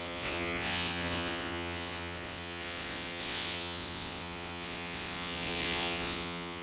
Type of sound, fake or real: fake